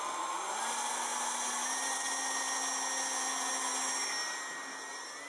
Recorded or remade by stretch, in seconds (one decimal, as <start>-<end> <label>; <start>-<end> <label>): 0.0-5.3 recorded